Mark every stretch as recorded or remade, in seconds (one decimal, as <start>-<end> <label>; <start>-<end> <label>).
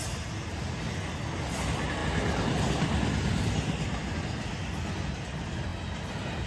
0.0-6.5 recorded